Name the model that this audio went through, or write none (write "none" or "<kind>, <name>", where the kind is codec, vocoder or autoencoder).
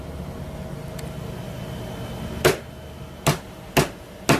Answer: none